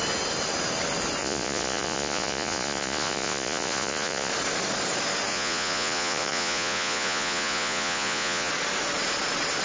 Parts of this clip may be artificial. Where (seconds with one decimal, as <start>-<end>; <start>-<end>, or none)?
1.2-4.3; 5.3-8.5